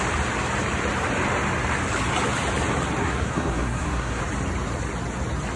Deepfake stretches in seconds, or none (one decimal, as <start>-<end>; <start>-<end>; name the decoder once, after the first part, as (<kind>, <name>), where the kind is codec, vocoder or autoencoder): 3.0-4.2 (codec, SNAC)